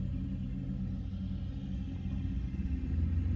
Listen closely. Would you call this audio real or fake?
real